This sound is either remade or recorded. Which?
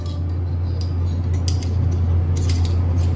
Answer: recorded